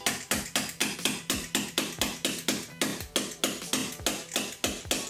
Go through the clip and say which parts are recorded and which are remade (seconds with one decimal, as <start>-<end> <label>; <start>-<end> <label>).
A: 0.0-5.1 recorded